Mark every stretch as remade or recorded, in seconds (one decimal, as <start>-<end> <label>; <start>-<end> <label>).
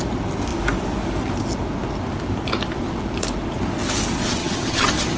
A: 0.0-4.4 recorded; 4.4-5.2 remade